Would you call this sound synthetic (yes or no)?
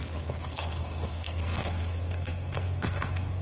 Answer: yes